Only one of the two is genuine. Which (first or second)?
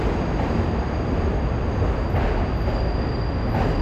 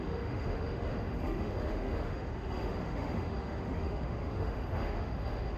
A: first